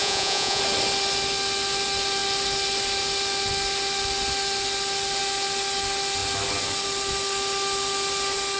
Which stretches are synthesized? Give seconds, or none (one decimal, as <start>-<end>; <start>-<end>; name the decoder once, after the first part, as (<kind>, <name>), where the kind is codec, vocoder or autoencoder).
0.0-0.6 (vocoder, Vocos)